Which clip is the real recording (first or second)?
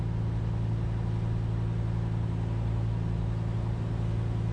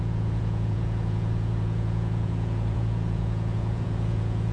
first